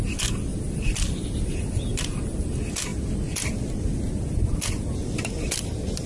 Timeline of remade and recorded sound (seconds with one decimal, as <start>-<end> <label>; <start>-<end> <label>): 0.0-6.1 recorded